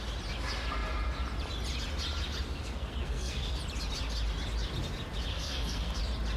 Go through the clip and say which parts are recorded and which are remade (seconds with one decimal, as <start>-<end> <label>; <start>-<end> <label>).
0.0-2.5 recorded; 2.5-3.6 remade; 3.6-5.3 recorded; 5.3-6.0 remade; 6.0-6.4 recorded